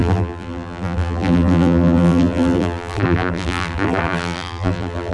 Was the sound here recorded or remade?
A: remade